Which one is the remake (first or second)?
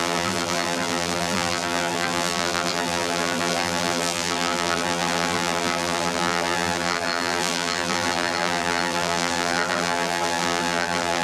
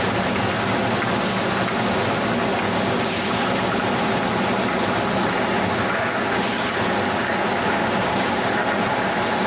first